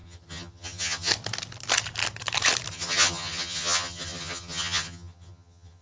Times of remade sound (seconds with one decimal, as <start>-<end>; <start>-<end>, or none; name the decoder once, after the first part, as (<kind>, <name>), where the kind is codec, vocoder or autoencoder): 0.0-1.1 (vocoder, HiFi-GAN); 2.7-5.8